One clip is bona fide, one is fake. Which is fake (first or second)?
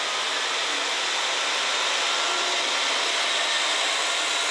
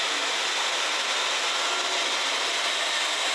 second